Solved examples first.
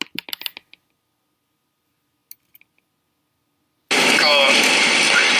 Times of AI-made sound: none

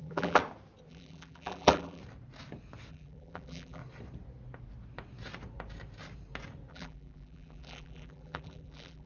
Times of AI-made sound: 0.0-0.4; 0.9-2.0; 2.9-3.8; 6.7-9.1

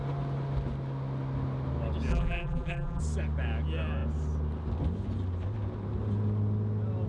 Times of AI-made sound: 2.1-3.0

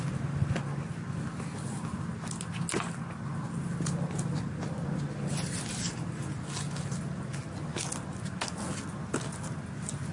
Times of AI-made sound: none

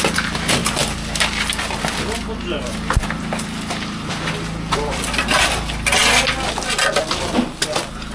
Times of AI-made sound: 0.0-6.0; 7.0-8.1